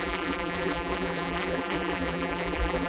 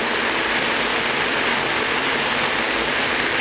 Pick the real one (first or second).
second